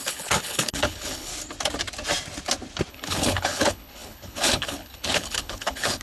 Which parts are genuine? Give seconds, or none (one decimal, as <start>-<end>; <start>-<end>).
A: 1.3-2.9